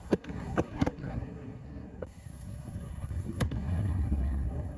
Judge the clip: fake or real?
fake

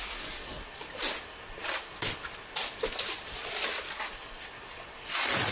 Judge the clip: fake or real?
real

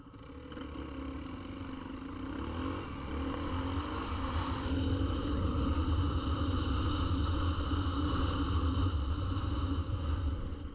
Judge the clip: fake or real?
real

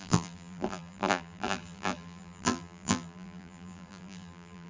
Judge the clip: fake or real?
fake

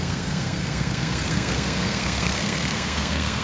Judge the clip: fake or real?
fake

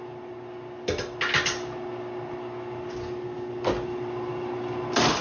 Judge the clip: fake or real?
real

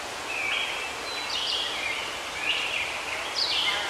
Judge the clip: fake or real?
real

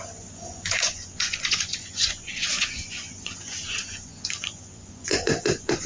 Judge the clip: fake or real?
fake